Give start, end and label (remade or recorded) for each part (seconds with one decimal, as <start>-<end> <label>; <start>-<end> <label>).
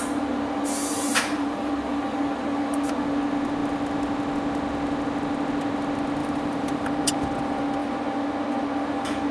0.0-1.1 recorded; 1.1-1.7 remade; 1.7-6.2 recorded; 6.2-7.2 remade; 7.2-9.3 recorded